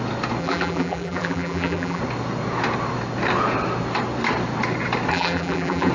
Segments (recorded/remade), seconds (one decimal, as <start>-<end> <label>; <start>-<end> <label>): 0.0-0.4 recorded; 0.4-2.0 remade; 2.0-5.1 recorded; 5.1-5.9 remade